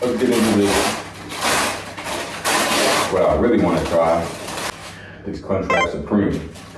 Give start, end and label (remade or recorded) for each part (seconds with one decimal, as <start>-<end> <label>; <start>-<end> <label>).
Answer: 0.0-4.8 recorded; 4.8-5.4 remade; 5.4-6.8 recorded